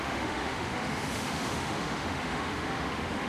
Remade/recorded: remade